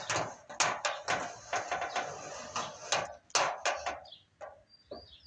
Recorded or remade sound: recorded